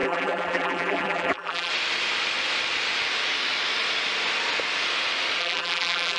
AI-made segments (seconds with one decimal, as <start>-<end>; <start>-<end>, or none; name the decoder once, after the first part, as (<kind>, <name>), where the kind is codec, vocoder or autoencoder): 0.0-1.7 (vocoder, BigVGAN v2); 5.4-6.2